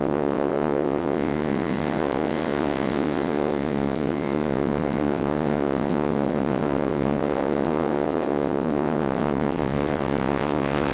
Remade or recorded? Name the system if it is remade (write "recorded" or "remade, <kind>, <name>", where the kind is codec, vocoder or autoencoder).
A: remade, vocoder, WaveNeXt